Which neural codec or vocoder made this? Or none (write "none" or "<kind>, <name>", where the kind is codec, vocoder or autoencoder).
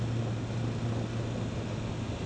none